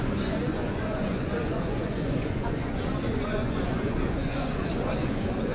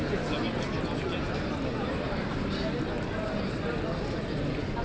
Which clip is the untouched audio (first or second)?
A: second